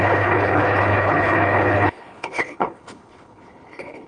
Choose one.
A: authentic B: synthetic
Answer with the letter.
B